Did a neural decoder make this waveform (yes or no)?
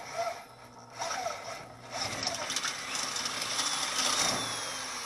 no